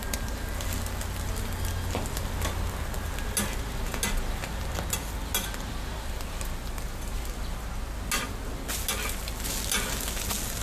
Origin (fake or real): real